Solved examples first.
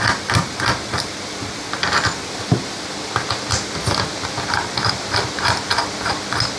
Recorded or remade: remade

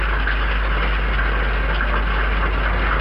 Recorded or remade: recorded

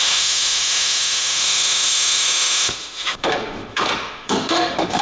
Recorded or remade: remade